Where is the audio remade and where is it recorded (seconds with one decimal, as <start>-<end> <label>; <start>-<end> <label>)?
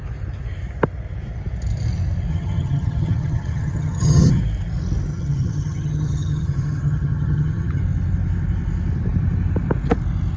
0.0-2.3 recorded; 2.3-4.4 remade; 4.4-5.1 recorded; 5.1-7.8 remade; 7.8-10.4 recorded